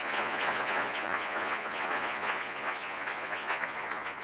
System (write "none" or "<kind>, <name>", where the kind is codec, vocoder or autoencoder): vocoder, Vocos